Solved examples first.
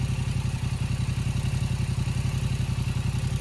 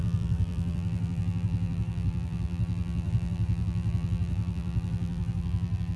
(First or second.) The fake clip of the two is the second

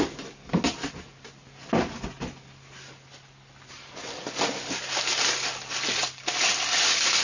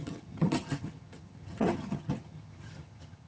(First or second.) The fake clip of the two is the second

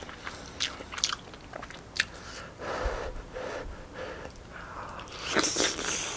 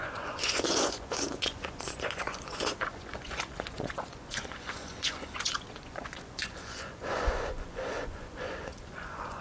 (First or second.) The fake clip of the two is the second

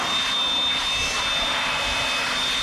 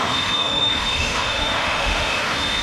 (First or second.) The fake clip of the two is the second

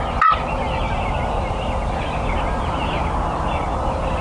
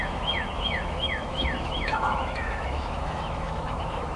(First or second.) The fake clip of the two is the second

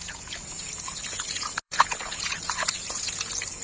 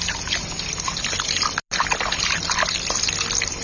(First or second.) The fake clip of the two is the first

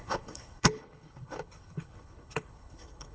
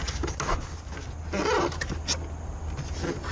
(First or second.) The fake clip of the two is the first